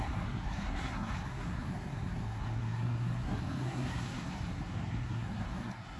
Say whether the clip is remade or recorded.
remade